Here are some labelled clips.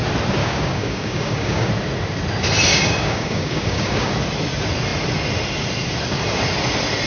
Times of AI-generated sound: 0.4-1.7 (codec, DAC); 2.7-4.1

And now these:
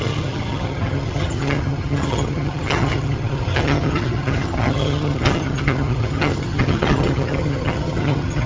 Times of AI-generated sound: 0.0-8.5 (vocoder, HiFi-GAN)

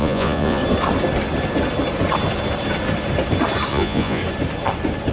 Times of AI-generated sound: 0.0-0.6 (vocoder, Vocos); 3.7-4.2

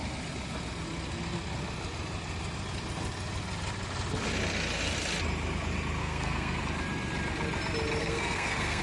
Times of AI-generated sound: 6.0-6.6 (codec, SNAC); 8.0-8.8

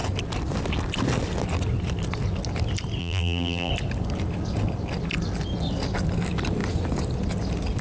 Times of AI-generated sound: 3.0-3.7 (vocoder, BigVGAN v2)